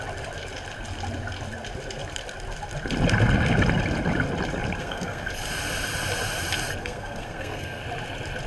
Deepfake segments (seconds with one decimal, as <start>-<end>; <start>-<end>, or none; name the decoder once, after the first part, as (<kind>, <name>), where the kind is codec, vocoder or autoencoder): 4.8-5.3 (codec, SNAC); 6.8-7.8